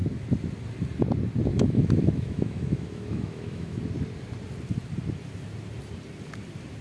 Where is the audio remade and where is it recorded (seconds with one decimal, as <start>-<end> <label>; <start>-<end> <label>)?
0.0-1.5 recorded; 1.5-3.8 remade; 3.8-6.8 recorded